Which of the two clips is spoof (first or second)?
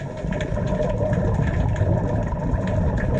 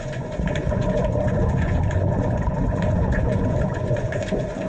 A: second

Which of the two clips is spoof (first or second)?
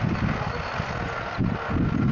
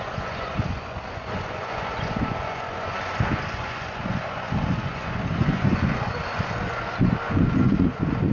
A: second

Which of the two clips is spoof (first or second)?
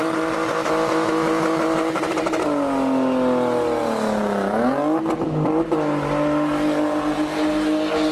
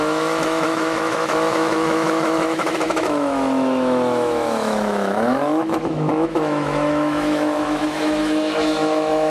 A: second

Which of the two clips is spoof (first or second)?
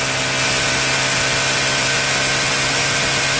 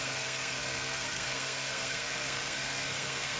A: second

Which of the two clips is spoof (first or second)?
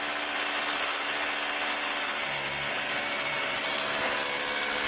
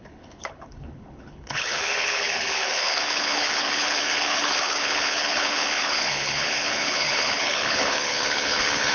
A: second